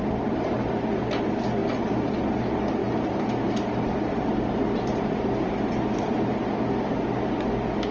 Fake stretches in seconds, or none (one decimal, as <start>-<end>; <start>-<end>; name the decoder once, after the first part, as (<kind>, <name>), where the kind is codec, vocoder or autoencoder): 0.0-0.7 (vocoder, BigVGAN v2); 2.8-6.4